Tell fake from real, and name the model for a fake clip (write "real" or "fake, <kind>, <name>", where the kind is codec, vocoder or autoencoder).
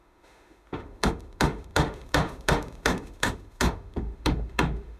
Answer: fake, autoencoder, DAC-VAE